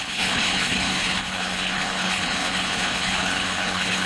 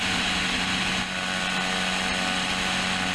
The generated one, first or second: first